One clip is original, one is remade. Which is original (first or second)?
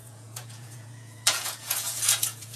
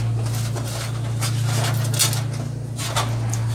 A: second